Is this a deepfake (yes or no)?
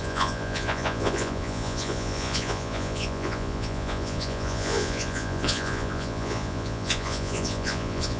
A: yes